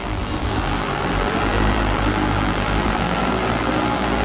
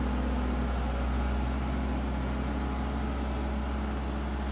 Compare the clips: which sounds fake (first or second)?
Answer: first